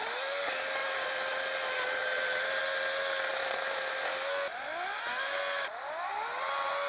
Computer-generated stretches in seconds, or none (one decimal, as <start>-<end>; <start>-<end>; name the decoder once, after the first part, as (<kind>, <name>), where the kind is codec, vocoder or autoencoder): 0.8-1.4 (vocoder, BigVGAN v2); 2.0-2.6; 3.3-3.9